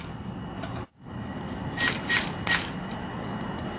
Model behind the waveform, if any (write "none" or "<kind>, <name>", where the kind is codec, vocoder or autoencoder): none